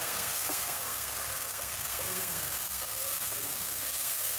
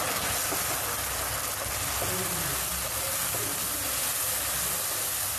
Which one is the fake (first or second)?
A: first